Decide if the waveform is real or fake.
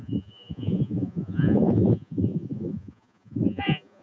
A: fake